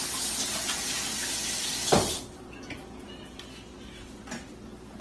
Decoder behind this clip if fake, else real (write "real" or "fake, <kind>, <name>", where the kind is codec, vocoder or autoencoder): real